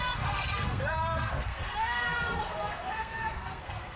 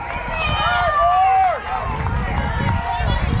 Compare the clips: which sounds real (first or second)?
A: second